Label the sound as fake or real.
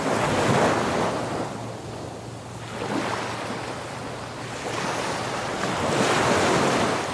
real